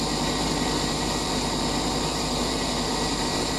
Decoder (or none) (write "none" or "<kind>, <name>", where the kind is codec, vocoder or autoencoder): vocoder, BigVGAN v2